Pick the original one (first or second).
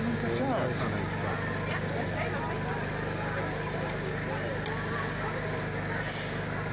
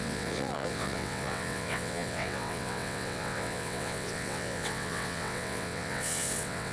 first